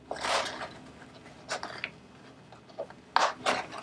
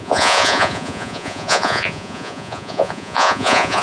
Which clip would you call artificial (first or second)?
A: second